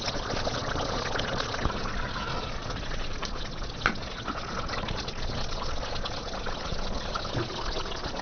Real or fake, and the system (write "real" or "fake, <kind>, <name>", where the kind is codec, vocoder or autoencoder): fake, vocoder, Vocos